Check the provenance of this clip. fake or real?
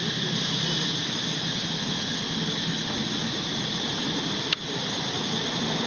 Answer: real